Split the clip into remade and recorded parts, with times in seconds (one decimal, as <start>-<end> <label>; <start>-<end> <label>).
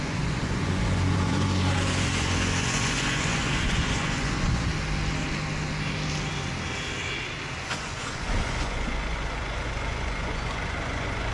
0.0-4.7 remade; 4.7-7.6 recorded; 7.6-11.3 remade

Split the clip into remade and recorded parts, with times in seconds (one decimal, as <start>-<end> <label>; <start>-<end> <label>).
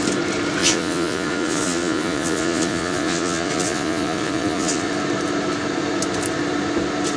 0.0-0.6 recorded; 0.6-4.9 remade; 4.9-7.2 recorded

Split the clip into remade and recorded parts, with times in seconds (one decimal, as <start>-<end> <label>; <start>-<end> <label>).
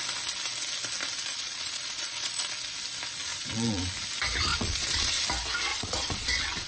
0.0-1.3 recorded; 1.3-2.5 remade; 2.5-3.3 recorded; 3.3-3.8 remade; 3.8-4.5 recorded; 4.5-5.2 remade; 5.2-5.7 recorded; 5.7-6.7 remade